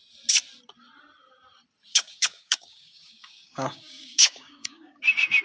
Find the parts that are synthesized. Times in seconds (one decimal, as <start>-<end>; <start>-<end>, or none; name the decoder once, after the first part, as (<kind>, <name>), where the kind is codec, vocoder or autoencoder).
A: 1.9-5.0 (codec, DAC)